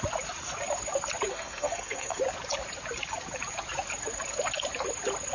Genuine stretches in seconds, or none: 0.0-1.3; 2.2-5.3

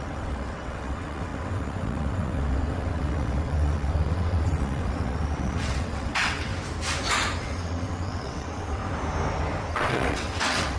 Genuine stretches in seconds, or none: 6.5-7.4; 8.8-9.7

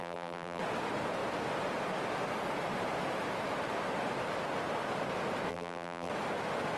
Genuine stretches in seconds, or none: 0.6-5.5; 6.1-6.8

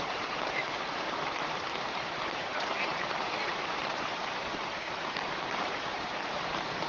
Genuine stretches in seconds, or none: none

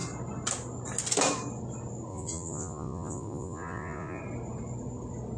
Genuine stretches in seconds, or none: 0.0-2.1; 4.2-5.4

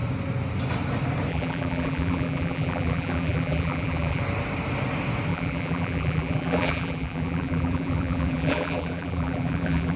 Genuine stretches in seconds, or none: 0.0-1.3; 4.2-5.3

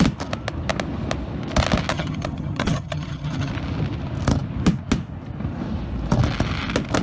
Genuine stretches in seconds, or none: 0.0-1.9; 3.5-7.0